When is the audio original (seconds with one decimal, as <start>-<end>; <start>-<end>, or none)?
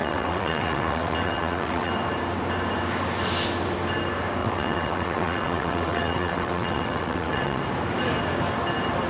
1.9-4.4; 7.6-9.1